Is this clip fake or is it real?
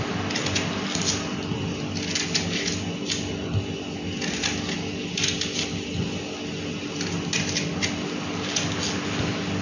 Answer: real